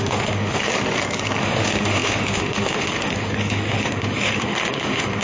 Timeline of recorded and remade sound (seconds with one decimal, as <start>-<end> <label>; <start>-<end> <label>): 0.0-0.7 remade; 0.7-1.4 recorded; 1.4-5.2 remade